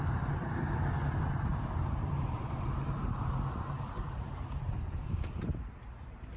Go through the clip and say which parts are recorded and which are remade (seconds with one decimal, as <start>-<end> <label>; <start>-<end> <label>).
0.0-1.5 recorded; 1.5-5.3 remade; 5.3-6.4 recorded